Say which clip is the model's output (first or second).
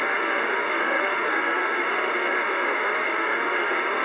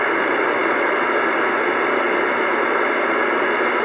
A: first